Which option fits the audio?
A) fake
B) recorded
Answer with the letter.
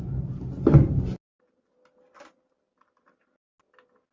B